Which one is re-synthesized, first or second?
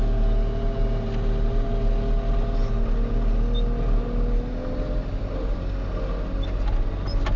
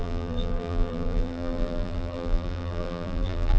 second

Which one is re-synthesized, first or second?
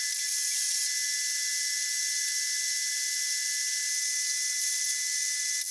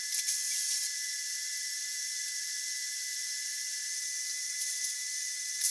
second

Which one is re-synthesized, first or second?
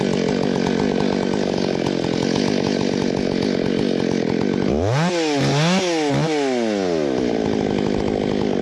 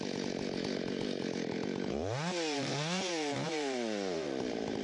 second